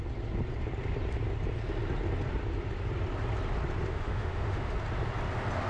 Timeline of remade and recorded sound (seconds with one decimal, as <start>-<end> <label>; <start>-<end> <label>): 0.0-3.9 recorded; 3.9-4.7 remade; 4.7-5.7 recorded